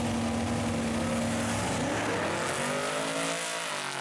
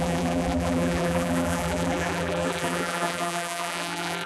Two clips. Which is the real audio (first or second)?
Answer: first